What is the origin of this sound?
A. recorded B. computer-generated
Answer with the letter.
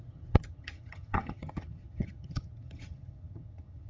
B